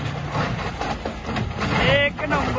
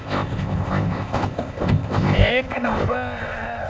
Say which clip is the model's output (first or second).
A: second